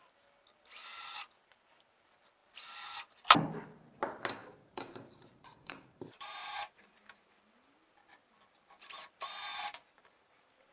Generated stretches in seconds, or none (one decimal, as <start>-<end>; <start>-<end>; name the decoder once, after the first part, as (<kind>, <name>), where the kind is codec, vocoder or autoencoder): 4.4-7.4 (vocoder, BigVGAN v2); 9.5-10.7